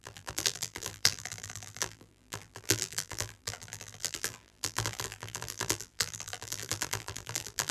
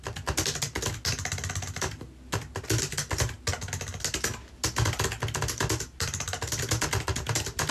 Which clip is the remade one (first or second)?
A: first